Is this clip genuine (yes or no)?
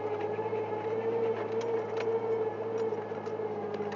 yes